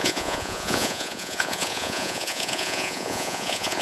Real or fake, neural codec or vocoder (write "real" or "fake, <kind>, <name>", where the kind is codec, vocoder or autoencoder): fake, vocoder, Vocos